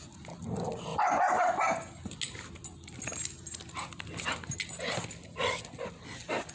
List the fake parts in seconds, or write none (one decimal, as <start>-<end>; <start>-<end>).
none